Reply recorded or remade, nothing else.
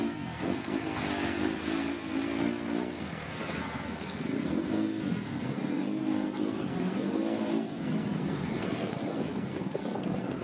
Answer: remade